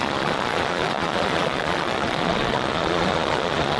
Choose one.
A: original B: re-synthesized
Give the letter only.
B